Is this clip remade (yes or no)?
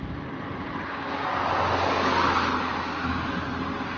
no